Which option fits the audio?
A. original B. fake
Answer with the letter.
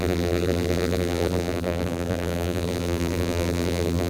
B